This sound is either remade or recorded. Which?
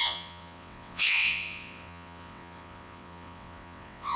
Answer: remade